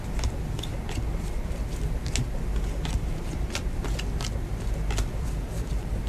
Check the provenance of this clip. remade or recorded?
recorded